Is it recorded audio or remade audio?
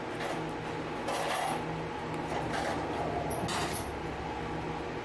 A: recorded